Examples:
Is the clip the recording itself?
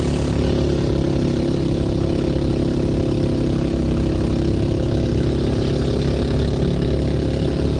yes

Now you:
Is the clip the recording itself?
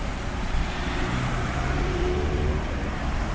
no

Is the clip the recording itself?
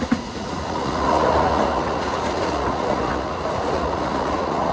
no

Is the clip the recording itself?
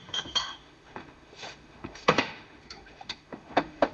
no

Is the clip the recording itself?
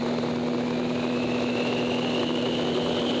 yes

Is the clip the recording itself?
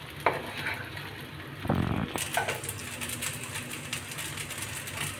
yes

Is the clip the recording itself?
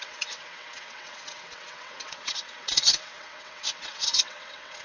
no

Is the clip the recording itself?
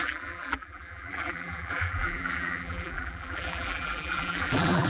no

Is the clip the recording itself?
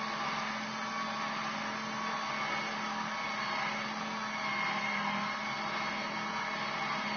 yes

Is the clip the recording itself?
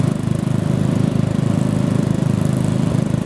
yes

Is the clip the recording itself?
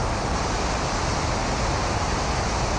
yes